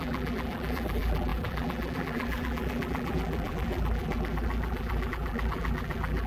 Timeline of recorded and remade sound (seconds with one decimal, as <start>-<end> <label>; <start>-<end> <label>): 0.0-6.3 remade